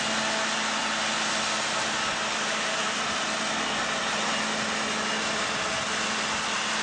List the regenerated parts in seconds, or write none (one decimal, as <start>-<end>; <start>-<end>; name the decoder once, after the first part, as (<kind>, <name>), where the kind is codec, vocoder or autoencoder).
none